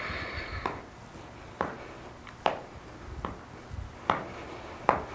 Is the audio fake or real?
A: real